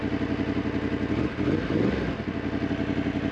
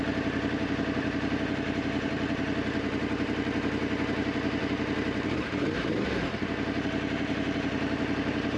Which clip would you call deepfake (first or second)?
second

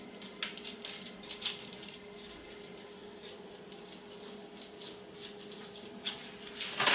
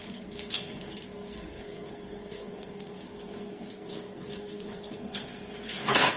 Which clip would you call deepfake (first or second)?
second